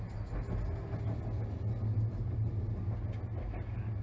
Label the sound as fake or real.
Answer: real